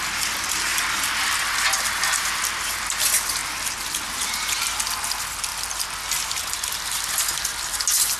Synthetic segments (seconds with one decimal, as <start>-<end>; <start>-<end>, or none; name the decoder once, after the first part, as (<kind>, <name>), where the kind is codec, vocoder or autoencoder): none